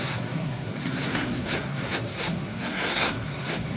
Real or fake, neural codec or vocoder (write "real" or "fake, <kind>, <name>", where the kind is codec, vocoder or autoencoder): fake, codec, SNAC